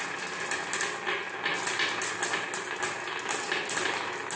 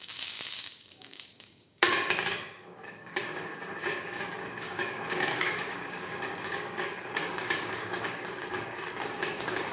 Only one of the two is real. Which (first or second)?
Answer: first